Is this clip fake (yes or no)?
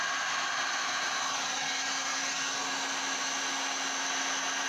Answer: no